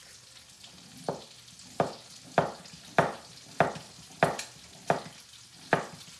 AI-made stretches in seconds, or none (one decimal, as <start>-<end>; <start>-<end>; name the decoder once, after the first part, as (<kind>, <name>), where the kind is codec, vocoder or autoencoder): none